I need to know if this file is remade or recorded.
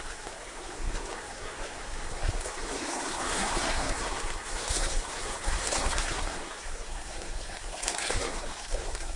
remade